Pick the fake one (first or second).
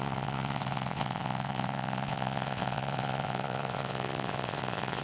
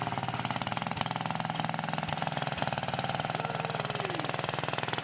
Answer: first